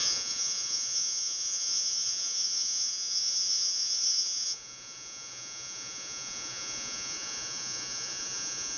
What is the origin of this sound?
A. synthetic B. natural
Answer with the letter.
A